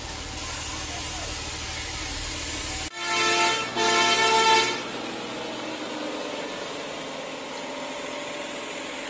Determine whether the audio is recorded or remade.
recorded